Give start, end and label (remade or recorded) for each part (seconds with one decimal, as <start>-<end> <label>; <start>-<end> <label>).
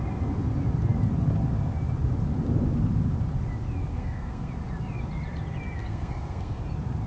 0.0-3.9 recorded; 3.9-4.5 remade; 4.5-5.8 recorded; 5.8-6.6 remade; 6.6-7.1 recorded